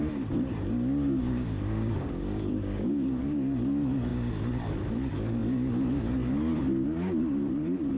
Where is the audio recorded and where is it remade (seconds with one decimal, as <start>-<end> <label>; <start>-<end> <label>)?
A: 0.0-1.2 recorded; 1.2-3.2 remade; 3.2-8.0 recorded